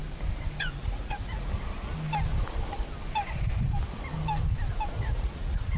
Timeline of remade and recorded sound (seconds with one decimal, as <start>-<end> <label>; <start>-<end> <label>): 0.0-0.6 recorded; 0.6-1.5 remade; 1.5-5.0 recorded; 5.0-5.8 remade